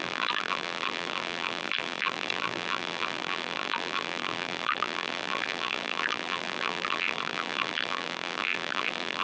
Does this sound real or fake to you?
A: fake